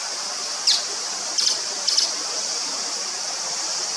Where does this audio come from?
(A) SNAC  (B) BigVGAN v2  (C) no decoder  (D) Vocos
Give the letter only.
B